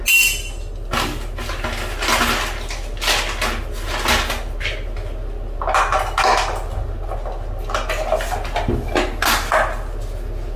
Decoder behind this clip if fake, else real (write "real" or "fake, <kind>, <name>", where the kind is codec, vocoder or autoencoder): real